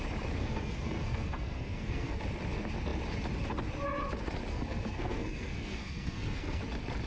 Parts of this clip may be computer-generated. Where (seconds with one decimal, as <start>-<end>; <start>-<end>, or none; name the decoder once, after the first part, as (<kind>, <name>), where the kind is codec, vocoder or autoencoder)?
0.4-2.2 (codec, SNAC); 4.5-6.6